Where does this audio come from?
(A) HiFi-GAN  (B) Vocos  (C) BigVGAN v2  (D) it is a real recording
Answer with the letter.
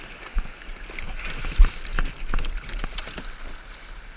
D